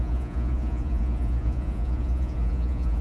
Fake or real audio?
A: fake